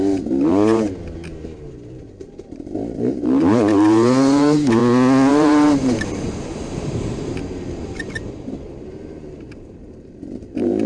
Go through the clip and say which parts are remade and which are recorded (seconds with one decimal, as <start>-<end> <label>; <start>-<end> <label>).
0.0-4.8 remade; 4.8-5.3 recorded; 5.3-10.9 remade